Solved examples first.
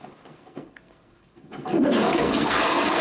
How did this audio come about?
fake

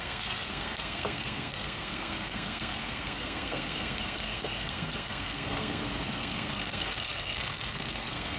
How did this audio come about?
fake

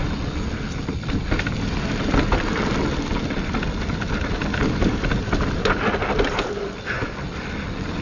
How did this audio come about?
real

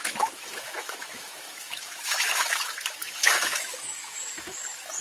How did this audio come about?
fake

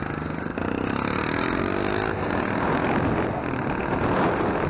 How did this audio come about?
real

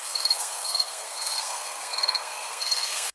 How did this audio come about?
fake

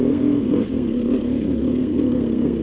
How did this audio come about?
fake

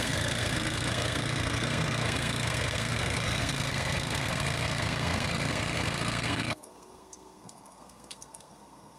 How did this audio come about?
fake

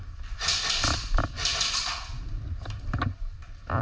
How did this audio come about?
real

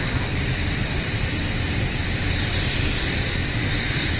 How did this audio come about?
fake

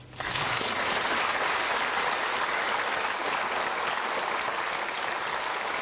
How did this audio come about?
real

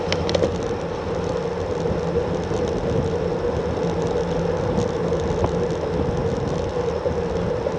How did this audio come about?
real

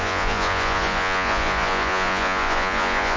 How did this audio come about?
fake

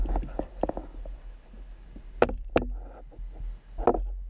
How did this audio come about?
real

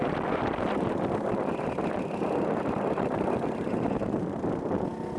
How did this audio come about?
real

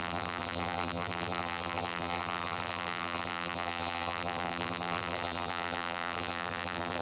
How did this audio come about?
fake